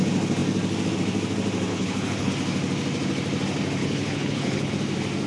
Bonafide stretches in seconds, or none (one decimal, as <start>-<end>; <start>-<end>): 0.0-1.7; 2.3-3.8; 4.7-5.3